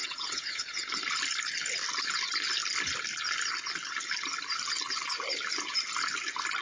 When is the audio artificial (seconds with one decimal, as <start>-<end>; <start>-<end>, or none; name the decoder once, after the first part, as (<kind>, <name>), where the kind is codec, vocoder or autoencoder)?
0.0-0.9 (vocoder, WaveNeXt)